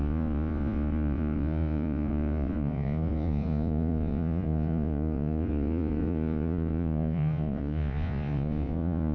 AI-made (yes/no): yes